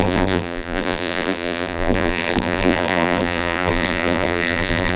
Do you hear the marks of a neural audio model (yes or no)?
yes